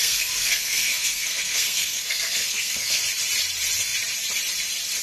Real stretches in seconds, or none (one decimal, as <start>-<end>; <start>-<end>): 3.0-5.0

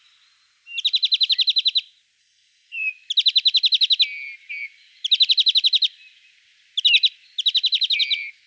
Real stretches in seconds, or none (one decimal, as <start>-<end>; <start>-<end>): 0.0-2.2; 2.9-8.5

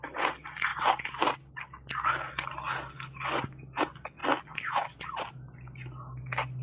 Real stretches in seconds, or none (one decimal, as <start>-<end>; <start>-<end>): 0.0-6.6

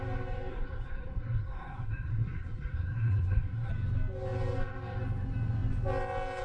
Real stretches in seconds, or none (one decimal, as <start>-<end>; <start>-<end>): 0.0-0.5; 3.7-6.4

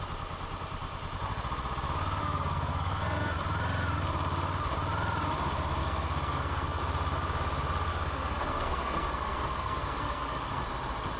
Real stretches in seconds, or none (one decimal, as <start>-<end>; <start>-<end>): 0.0-2.2; 3.4-5.8; 6.8-7.9; 10.6-11.2

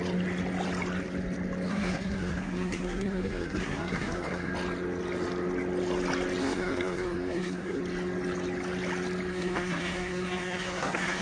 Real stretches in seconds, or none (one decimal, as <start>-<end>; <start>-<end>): 0.0-1.7; 4.5-6.4; 7.8-9.3

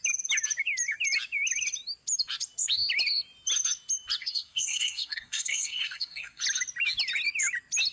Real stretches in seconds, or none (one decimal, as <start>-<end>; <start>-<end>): 0.0-4.2; 6.4-7.9

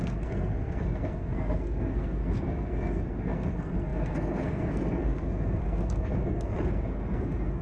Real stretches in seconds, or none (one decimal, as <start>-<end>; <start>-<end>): none